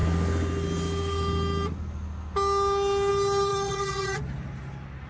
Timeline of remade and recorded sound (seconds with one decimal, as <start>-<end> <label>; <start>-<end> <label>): 0.0-3.5 recorded; 3.5-4.2 remade; 4.2-5.1 recorded